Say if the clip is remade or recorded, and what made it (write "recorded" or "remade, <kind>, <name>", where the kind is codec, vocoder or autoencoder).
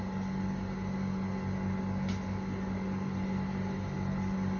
recorded